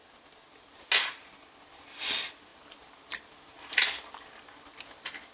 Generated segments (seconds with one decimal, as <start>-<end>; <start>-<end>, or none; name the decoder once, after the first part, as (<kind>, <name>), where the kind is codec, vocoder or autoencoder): none